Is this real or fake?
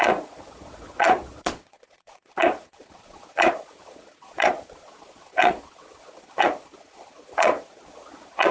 fake